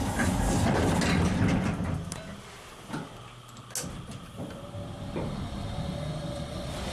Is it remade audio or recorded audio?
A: recorded